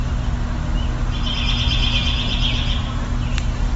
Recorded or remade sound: recorded